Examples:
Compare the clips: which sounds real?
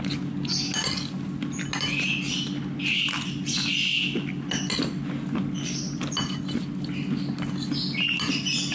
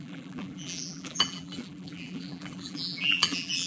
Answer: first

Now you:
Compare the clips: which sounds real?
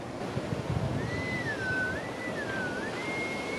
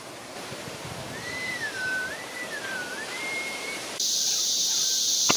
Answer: first